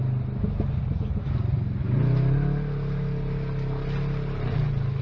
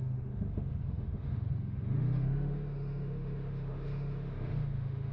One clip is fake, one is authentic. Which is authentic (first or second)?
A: first